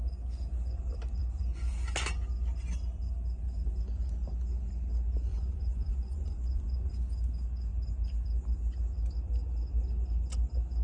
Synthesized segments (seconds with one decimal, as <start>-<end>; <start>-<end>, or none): 5.3-6.9